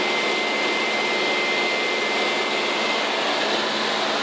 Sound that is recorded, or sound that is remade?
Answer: recorded